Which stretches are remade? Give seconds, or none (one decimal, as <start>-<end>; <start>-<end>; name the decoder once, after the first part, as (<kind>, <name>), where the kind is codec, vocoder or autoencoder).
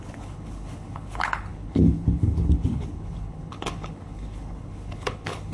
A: 0.0-5.5 (codec, HILCodec)